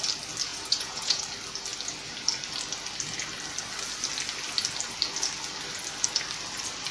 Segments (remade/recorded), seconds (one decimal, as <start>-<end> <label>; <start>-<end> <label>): 0.0-0.5 recorded; 0.5-1.2 remade; 1.2-6.9 recorded